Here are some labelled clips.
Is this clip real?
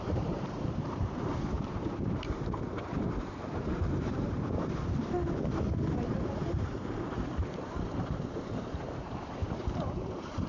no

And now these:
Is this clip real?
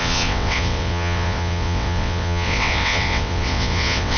no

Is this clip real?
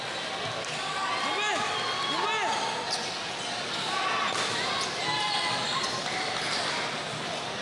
yes